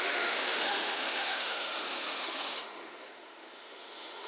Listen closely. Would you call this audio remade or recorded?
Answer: remade